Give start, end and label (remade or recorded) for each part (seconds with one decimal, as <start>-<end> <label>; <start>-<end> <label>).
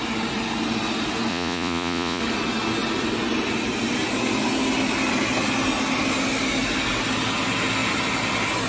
0.0-1.3 recorded; 1.3-2.2 remade; 2.2-8.7 recorded